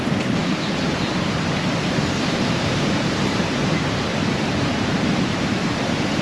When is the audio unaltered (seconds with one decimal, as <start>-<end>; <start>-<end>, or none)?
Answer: none

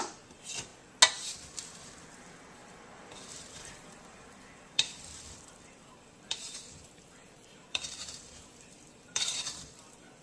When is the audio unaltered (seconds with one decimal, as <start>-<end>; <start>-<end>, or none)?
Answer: 0.7-2.1

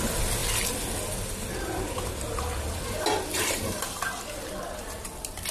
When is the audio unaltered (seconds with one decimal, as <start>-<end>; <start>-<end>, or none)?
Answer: 0.0-5.5

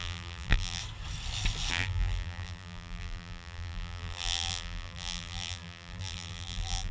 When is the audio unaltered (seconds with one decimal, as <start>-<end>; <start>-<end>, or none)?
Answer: 0.8-1.7

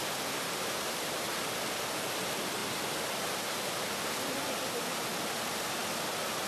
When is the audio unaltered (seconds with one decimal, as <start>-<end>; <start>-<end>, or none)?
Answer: 0.0-2.6; 4.4-6.5

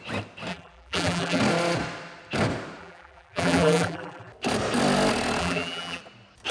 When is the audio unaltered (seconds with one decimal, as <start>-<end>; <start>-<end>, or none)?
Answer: 0.0-0.5; 1.4-2.8; 4.3-5.4; 6.0-6.5

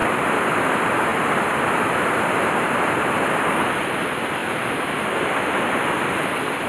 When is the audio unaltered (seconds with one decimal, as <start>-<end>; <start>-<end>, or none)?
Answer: none